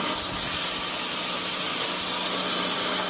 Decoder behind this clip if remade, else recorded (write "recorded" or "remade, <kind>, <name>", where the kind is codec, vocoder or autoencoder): recorded